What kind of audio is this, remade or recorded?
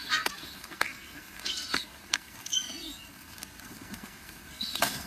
remade